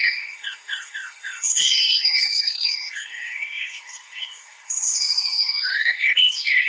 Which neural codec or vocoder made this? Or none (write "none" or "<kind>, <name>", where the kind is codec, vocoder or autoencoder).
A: codec, SNAC